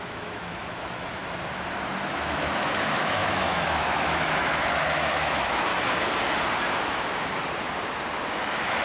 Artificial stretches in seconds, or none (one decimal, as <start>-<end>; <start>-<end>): 0.0-1.2; 1.9-5.7; 8.3-8.8